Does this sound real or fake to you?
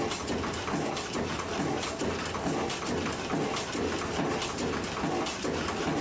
real